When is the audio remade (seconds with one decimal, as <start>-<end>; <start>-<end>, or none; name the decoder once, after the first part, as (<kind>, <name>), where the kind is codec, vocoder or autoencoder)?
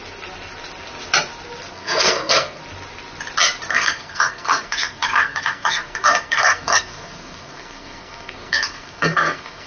1.7-2.6 (codec, SNAC); 3.7-9.7